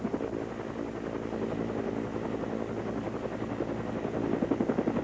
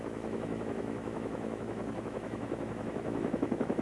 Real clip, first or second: first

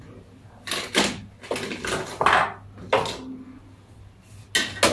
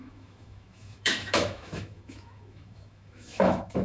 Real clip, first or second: first